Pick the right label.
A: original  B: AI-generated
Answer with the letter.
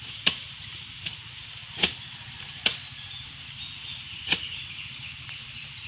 B